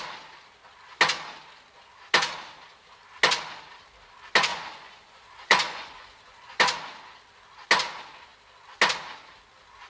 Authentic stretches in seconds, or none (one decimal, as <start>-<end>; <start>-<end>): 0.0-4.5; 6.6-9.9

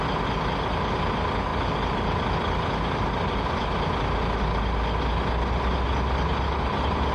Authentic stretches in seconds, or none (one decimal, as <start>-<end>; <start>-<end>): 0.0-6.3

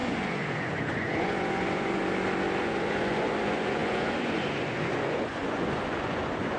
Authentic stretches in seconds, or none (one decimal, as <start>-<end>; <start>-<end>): 2.0-2.6

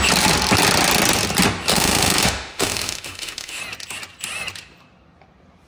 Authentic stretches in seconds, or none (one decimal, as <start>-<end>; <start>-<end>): 0.0-1.7; 3.6-5.7